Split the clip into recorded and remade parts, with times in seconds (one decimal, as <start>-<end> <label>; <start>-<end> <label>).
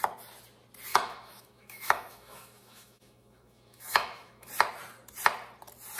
0.0-0.9 recorded; 0.9-4.5 remade; 4.5-6.0 recorded